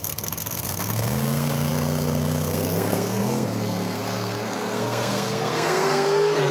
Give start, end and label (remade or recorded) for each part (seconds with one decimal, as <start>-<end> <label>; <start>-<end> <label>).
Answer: 0.0-6.5 remade